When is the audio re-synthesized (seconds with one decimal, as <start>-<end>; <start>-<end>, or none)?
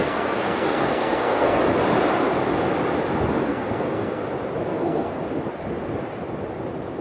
0.0-1.6; 3.4-4.2; 4.7-5.2